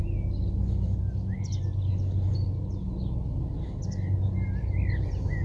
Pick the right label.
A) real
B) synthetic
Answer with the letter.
A